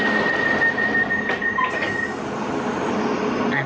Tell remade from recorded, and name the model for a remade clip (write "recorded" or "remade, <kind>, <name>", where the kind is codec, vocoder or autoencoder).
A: recorded